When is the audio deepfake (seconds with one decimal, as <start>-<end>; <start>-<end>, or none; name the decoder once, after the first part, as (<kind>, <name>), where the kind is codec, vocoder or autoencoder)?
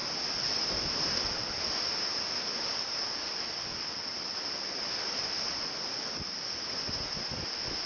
none